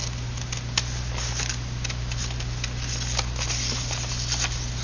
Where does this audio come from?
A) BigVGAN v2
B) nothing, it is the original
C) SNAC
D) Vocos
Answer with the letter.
B